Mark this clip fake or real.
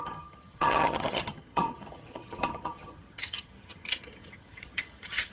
fake